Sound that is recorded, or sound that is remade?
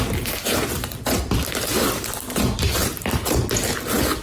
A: recorded